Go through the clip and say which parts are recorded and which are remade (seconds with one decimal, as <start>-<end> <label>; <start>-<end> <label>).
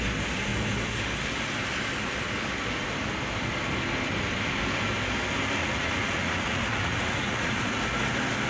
0.0-5.6 recorded; 5.6-7.8 remade; 7.8-8.5 recorded